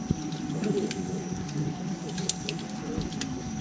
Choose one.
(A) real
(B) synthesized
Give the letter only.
A